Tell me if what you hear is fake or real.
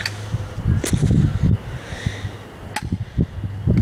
real